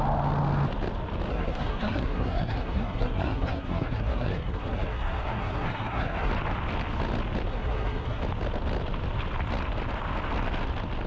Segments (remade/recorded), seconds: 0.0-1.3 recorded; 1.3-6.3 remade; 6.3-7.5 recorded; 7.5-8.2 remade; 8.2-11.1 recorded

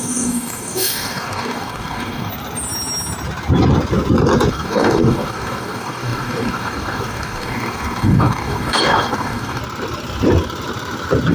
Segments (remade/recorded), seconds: 0.0-2.3 remade; 2.3-4.5 recorded; 4.5-9.6 remade; 9.6-11.3 recorded

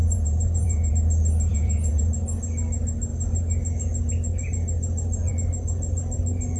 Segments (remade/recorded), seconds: 0.0-0.9 remade; 0.9-1.5 recorded; 1.5-2.0 remade; 2.0-6.6 recorded